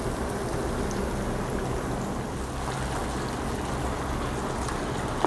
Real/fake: real